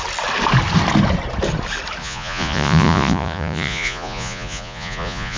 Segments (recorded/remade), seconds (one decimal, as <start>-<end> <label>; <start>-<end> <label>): 0.0-2.0 recorded; 2.0-5.4 remade